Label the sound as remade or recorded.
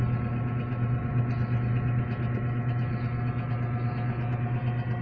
recorded